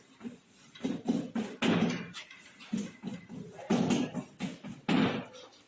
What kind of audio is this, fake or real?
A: real